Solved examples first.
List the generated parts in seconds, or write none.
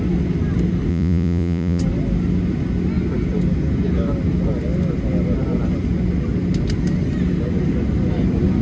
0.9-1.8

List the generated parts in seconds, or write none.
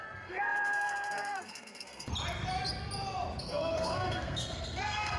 0.0-2.1; 3.4-5.2